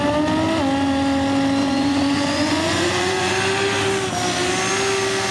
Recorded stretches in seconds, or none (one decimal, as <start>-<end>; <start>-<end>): 0.0-1.6; 3.3-5.3